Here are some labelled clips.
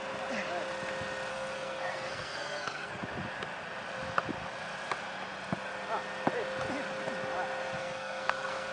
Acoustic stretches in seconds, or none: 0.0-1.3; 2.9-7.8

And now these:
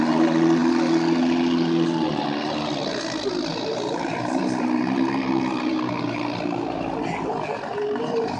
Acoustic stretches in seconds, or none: 0.0-3.5; 7.0-7.7

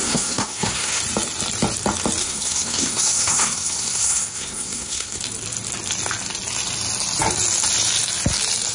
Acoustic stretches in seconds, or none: 1.0-2.2; 5.2-8.7

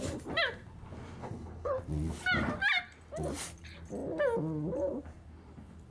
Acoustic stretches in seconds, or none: 0.0-1.2; 1.8-5.9

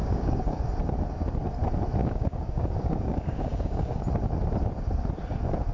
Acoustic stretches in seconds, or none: 0.6-2.0; 4.0-5.7

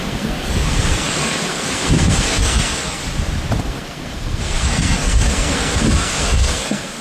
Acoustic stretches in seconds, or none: 3.0-3.6